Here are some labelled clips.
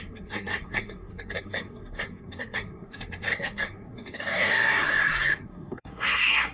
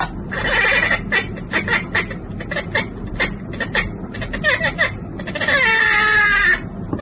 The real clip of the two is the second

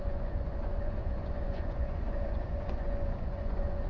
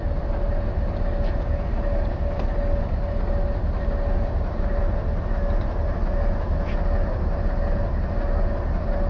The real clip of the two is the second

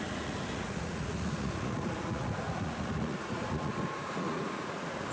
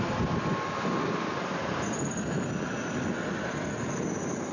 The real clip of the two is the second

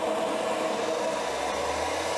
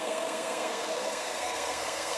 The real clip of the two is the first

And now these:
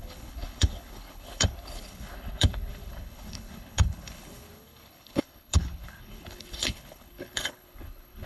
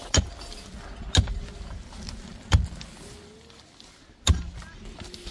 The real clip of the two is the second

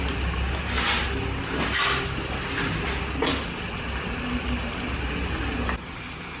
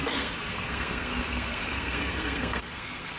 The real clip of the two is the first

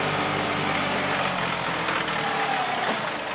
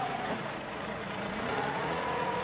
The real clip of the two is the first